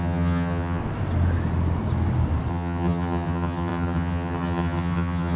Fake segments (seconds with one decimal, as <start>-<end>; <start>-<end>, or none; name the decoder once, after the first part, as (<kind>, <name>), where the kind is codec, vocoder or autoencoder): 0.0-0.8 (vocoder, HiFi-GAN); 2.5-5.4